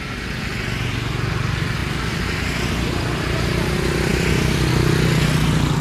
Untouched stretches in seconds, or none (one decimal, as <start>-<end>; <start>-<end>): 0.0-5.8